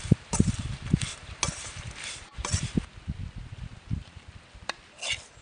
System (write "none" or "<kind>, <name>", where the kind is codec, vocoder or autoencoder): none